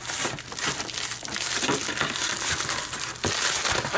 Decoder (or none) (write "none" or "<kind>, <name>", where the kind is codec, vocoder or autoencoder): none